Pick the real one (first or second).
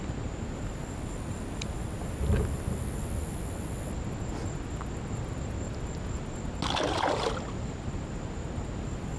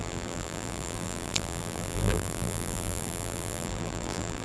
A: first